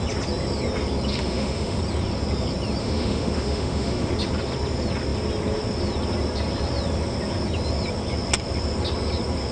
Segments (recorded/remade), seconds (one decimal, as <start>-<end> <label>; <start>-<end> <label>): 0.0-1.1 recorded; 1.1-1.8 remade; 1.8-2.8 recorded; 2.8-4.1 remade; 4.1-9.5 recorded